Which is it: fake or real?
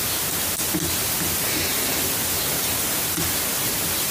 real